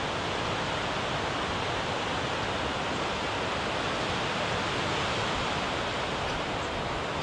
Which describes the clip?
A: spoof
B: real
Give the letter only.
B